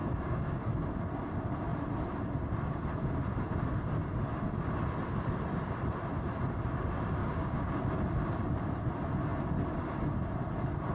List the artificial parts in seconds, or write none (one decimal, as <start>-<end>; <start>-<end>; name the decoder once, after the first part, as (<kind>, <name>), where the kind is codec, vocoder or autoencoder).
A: 0.0-0.6 (codec, DAC); 7.2-7.7

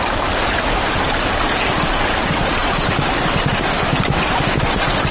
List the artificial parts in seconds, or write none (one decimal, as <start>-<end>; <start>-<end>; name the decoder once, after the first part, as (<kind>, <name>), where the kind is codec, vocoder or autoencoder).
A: none

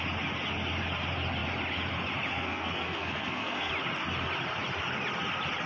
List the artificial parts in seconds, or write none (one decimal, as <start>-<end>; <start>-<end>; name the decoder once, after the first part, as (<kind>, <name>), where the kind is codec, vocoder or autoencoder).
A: 2.3-3.7 (codec, SNAC)

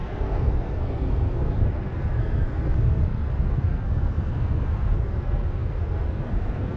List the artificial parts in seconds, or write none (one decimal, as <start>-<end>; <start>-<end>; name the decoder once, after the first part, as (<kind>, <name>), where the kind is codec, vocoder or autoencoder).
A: 0.0-6.8 (codec, SNAC)

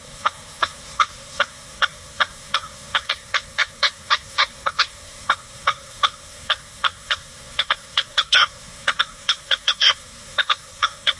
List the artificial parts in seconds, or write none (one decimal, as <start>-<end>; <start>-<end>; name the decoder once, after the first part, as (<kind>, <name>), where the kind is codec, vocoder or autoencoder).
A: 0.0-11.2 (codec, SNAC)

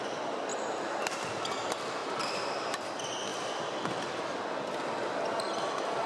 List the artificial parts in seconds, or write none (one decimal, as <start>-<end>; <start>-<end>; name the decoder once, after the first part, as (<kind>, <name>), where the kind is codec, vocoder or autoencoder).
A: 0.5-1.3 (vocoder, BigVGAN v2); 2.0-2.9